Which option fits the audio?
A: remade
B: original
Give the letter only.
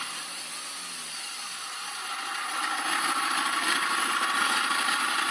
B